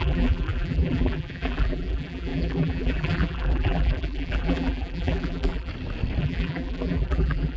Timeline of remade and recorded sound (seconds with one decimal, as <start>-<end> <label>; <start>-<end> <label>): 0.0-5.7 remade; 5.7-6.2 recorded; 6.2-7.6 remade